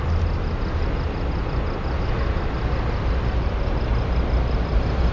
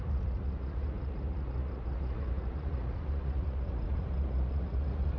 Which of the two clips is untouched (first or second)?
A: first